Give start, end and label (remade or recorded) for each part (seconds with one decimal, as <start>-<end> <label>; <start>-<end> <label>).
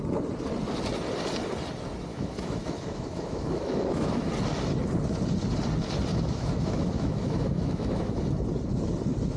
0.0-2.1 recorded; 2.1-4.3 remade; 4.3-6.1 recorded; 6.1-8.2 remade; 8.2-9.4 recorded